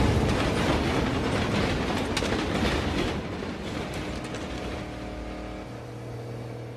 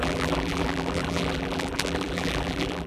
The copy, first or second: second